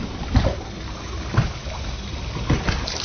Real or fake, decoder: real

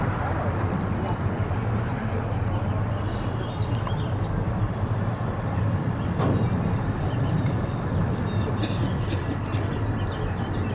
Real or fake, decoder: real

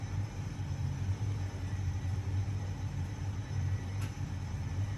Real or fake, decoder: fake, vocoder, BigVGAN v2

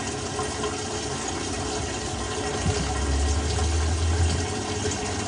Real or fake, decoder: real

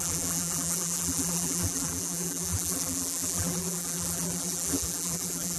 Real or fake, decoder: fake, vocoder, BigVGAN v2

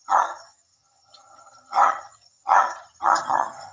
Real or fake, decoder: fake, vocoder, HiFi-GAN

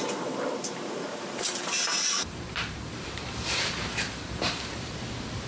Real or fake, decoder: fake, vocoder, BigVGAN v2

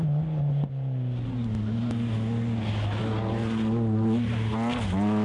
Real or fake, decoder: real